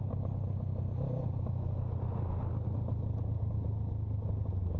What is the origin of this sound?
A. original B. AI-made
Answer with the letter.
A